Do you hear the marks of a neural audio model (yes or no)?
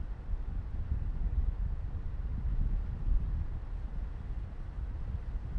no